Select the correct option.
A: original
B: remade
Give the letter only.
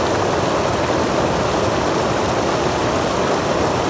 A